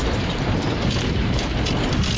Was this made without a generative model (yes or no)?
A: yes